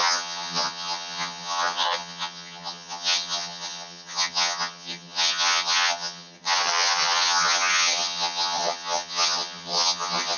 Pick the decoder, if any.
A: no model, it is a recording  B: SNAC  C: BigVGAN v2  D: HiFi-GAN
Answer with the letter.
D